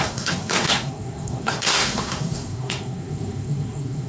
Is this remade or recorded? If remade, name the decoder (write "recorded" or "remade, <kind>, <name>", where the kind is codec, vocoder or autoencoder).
remade, codec, SNAC